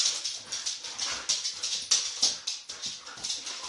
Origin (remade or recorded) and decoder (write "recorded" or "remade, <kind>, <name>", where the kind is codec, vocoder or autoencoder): recorded